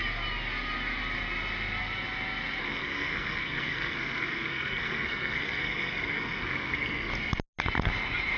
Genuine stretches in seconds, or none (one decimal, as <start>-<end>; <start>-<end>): 0.0-2.6; 7.1-8.4